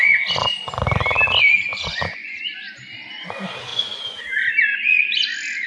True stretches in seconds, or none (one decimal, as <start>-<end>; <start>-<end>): 0.0-1.7; 2.4-3.7; 4.2-5.7